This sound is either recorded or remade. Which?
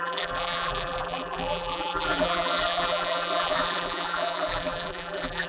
remade